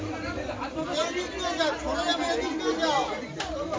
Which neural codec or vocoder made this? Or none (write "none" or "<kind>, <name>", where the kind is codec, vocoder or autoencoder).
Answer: none